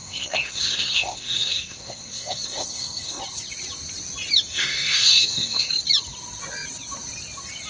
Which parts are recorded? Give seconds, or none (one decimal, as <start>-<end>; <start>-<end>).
3.2-4.5; 5.7-7.7